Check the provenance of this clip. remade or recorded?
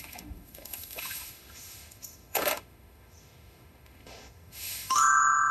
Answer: remade